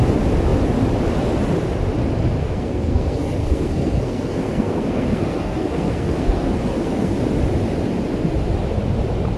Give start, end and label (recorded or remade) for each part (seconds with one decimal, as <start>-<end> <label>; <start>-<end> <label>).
0.0-2.4 recorded; 2.4-7.2 remade; 7.2-9.4 recorded